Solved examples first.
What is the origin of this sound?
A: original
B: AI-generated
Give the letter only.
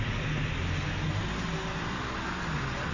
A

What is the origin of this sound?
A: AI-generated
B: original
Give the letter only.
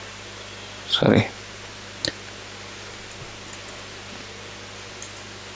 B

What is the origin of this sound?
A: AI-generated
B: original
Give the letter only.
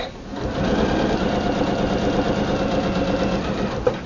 B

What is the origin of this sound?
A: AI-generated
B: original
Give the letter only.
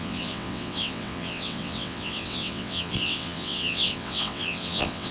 A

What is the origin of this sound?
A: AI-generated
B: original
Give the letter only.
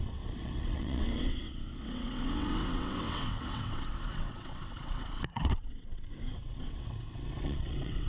A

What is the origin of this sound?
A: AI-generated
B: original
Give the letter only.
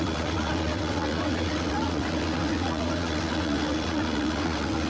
A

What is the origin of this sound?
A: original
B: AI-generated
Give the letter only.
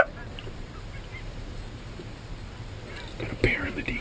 A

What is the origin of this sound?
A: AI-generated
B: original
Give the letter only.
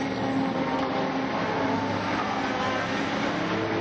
B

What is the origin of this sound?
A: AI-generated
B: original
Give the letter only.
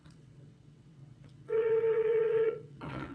A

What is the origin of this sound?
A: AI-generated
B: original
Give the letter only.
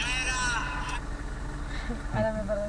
B